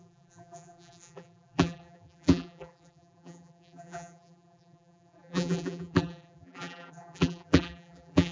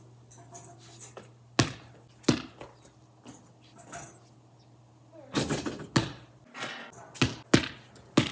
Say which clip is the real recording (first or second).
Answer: second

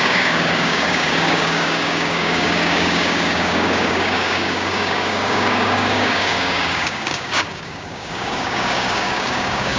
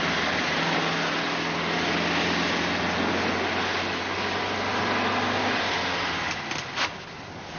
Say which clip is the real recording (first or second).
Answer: second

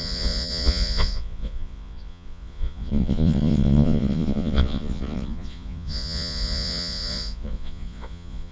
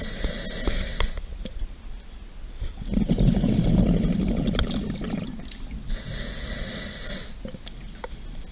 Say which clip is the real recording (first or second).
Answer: second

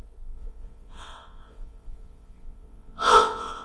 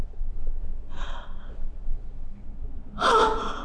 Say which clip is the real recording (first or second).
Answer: second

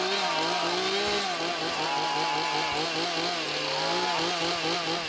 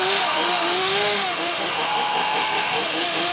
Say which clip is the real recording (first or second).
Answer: first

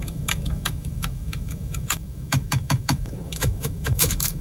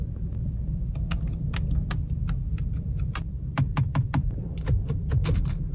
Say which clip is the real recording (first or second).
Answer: second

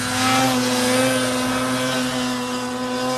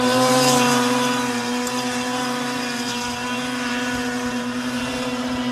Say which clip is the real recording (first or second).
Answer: first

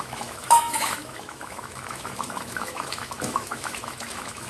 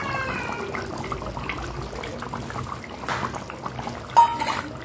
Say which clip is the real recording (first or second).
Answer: second